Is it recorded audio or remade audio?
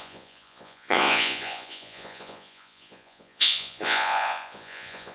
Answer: remade